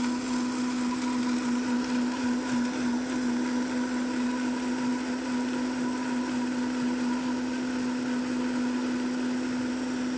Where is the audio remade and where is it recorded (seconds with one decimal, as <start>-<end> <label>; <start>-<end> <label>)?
0.0-10.2 recorded

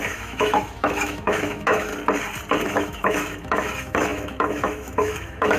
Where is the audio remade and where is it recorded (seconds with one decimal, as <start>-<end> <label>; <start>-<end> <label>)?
0.0-1.9 remade; 1.9-2.6 recorded; 2.6-5.6 remade

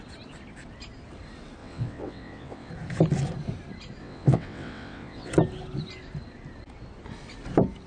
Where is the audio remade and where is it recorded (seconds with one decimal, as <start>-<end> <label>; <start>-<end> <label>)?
0.0-1.6 recorded; 1.6-2.7 remade; 2.7-4.0 recorded; 4.0-5.3 remade; 5.3-7.9 recorded

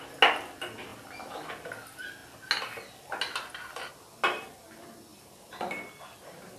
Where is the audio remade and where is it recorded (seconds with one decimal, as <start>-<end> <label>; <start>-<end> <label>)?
0.0-6.6 recorded